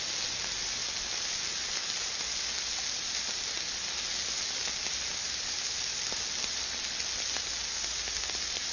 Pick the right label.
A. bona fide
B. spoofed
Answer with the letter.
A